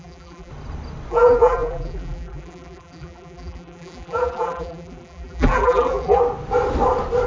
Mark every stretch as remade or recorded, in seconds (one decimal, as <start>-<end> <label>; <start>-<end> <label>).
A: 0.0-0.5 remade; 0.5-1.1 recorded; 1.1-6.2 remade; 6.2-7.3 recorded